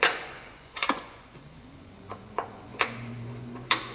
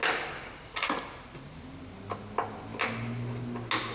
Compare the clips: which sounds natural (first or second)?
second